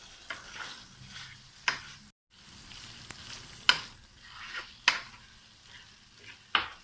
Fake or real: real